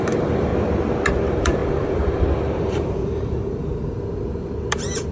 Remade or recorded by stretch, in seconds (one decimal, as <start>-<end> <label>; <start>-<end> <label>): 0.0-0.5 remade; 0.5-1.1 recorded; 1.1-5.1 remade